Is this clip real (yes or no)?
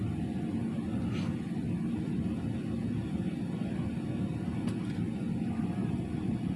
yes